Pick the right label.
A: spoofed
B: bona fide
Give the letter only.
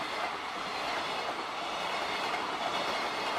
B